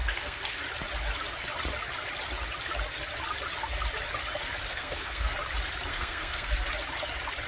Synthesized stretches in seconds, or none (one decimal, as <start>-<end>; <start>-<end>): 0.0-0.6; 4.7-5.3; 5.9-6.7